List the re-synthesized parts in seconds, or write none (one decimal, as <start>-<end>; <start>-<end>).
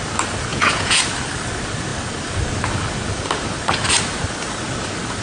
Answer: 0.5-1.0